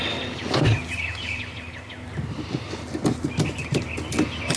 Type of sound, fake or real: real